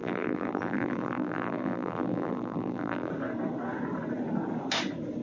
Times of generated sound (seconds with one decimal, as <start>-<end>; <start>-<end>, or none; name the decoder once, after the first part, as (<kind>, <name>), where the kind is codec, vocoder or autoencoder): 0.0-3.1 (vocoder, BigVGAN v2)